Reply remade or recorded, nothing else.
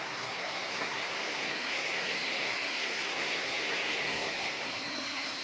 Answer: remade